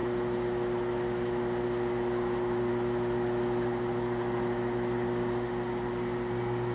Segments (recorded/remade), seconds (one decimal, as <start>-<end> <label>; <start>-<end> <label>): 0.0-6.7 recorded